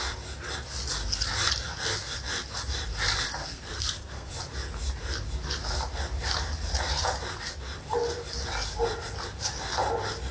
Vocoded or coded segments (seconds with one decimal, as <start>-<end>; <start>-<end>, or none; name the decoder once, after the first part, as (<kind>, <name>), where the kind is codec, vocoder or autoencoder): 3.4-4.3 (codec, SNAC)